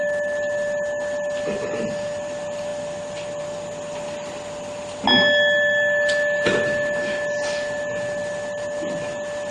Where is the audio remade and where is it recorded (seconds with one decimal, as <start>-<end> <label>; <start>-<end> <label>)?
0.0-9.5 recorded